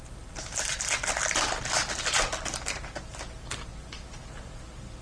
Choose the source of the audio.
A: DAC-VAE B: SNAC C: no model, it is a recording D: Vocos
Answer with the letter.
C